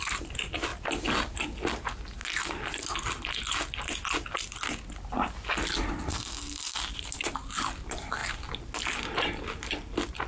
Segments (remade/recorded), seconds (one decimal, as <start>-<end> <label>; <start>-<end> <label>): 0.0-6.1 recorded; 6.1-6.8 remade; 6.8-10.3 recorded